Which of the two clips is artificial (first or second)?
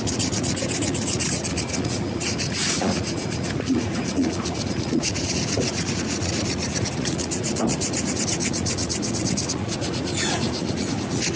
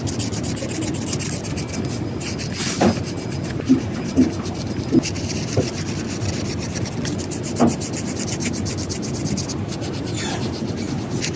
first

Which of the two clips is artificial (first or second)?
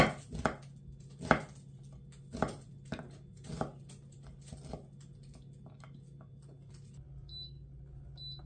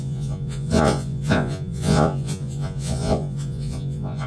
second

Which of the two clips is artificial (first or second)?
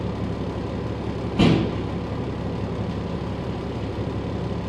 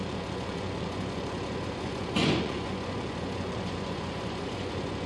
second